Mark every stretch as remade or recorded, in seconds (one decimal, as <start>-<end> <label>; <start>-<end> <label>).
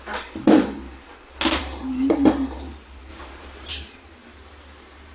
0.0-0.8 remade; 0.8-1.6 recorded; 1.6-5.1 remade